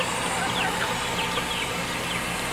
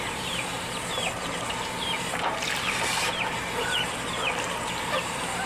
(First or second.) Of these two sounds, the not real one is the second